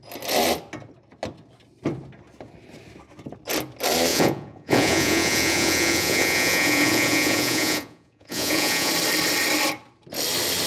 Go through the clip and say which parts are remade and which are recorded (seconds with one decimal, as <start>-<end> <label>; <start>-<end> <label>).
0.0-4.1 recorded; 4.1-8.9 remade; 8.9-10.7 recorded